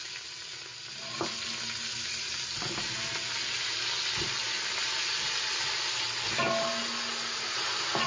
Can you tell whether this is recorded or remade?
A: recorded